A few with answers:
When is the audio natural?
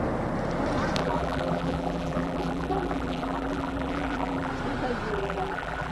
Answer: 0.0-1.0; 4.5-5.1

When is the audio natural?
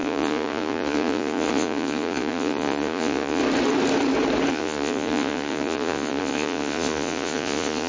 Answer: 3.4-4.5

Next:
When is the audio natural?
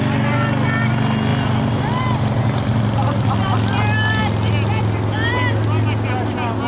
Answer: 0.0-1.3; 2.0-6.7